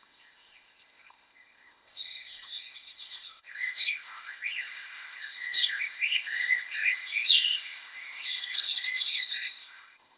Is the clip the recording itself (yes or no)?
no